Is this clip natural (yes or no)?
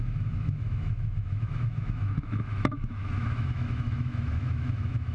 no